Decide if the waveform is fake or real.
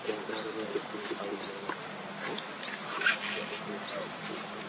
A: real